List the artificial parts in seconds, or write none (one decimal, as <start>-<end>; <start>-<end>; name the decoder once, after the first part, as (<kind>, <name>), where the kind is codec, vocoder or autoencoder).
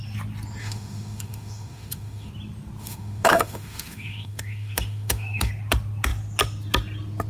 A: 0.6-2.3 (autoencoder, DAC-VAE); 2.8-5.5